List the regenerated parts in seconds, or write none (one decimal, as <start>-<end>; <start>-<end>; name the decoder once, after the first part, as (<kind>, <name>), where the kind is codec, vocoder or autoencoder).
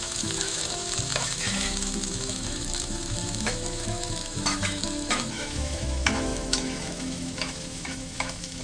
0.0-8.6 (autoencoder, DAC-VAE)